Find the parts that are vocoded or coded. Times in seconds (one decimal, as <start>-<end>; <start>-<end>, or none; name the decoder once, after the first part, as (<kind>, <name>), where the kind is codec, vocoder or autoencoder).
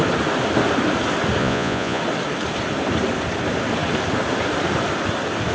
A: 1.4-2.0 (vocoder, Vocos)